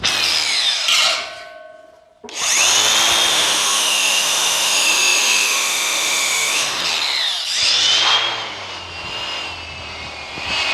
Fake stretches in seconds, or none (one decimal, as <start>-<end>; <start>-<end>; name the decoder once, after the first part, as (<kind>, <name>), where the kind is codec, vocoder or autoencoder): 3.3-6.8 (autoencoder, DAC-VAE)